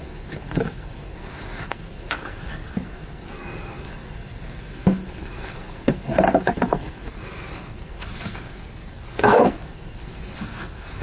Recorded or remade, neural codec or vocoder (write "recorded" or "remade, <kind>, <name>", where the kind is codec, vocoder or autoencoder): remade, codec, SNAC